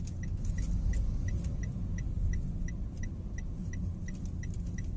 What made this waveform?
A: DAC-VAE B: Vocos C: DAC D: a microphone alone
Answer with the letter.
D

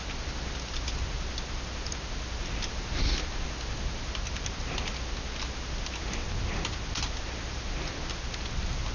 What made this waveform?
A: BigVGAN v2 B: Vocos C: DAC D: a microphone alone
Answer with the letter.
D